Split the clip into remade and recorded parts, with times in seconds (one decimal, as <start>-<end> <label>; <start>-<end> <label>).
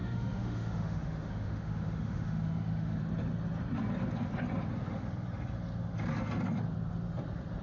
0.0-3.0 remade; 3.0-7.6 recorded